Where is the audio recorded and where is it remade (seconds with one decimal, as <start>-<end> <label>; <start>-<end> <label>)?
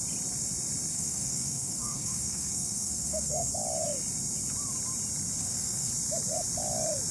0.0-0.9 recorded; 0.9-3.5 remade; 3.5-5.4 recorded; 5.4-5.9 remade; 5.9-7.1 recorded